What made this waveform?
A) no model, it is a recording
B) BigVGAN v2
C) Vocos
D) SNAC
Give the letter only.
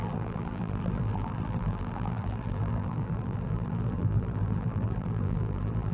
B